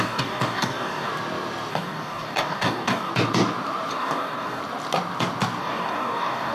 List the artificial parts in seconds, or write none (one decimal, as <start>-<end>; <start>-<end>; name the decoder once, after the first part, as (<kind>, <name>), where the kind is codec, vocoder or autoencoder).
0.0-1.1 (codec, DAC); 1.7-3.1; 3.9-4.6; 5.6-6.5